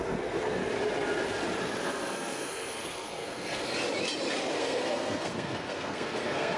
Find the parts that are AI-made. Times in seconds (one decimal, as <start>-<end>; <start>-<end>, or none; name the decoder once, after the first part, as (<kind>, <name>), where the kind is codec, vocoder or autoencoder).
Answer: 0.0-0.6 (codec, SNAC); 1.8-3.7; 4.6-6.6